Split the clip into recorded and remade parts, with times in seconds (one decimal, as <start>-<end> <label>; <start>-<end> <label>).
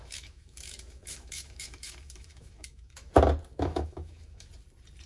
0.0-3.1 remade; 3.1-3.5 recorded; 3.5-4.5 remade; 4.5-5.1 recorded